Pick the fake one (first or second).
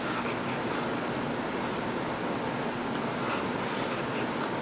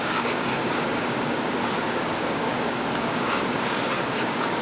second